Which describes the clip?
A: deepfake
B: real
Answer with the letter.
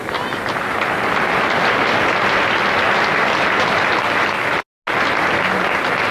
B